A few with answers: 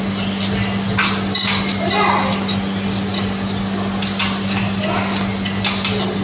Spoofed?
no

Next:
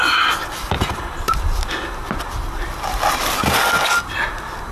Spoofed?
no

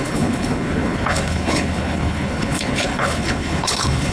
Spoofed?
yes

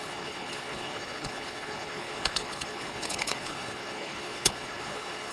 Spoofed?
yes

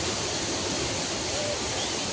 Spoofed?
no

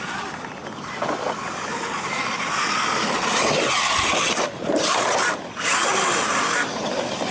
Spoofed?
no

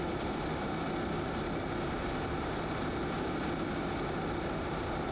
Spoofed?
no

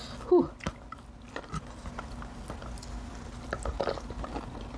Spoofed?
no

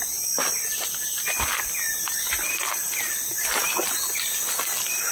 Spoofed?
no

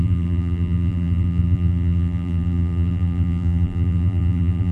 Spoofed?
yes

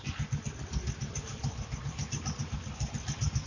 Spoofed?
no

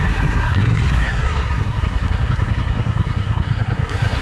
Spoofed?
yes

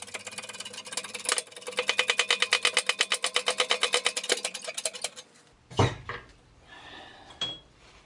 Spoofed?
no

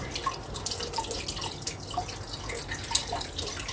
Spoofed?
no